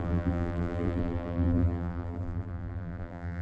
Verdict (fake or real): fake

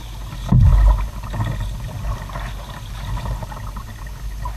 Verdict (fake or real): real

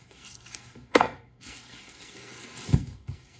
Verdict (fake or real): fake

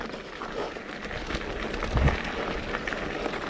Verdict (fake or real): real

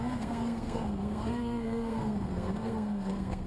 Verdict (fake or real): fake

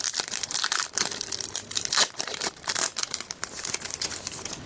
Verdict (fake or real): fake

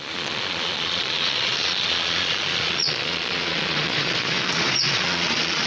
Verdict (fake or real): fake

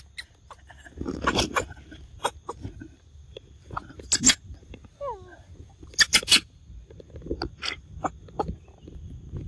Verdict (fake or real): real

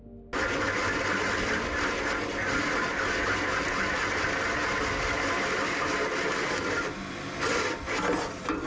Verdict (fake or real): real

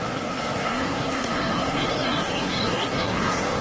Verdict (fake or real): fake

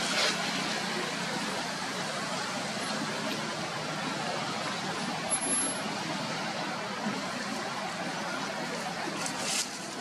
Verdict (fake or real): real